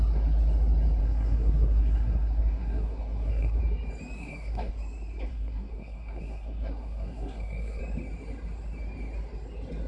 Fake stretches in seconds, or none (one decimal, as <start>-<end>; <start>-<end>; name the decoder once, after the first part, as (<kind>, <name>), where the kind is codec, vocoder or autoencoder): 1.0-3.6 (codec, SNAC); 4.2-4.7; 5.3-7.8